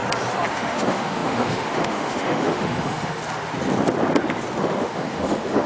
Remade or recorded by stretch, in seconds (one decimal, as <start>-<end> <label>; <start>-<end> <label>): 0.0-0.5 recorded; 0.5-3.2 remade; 3.2-4.6 recorded; 4.6-5.7 remade